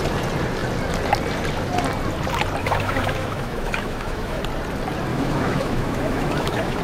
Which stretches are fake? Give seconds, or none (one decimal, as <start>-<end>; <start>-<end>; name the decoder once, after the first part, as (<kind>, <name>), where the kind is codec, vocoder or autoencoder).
2.6-4.4 (autoencoder, DAC-VAE); 5.1-6.8